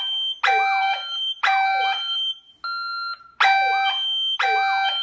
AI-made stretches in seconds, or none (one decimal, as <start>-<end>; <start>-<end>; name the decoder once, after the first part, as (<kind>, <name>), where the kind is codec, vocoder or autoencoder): 0.8-2.5 (vocoder, BigVGAN v2)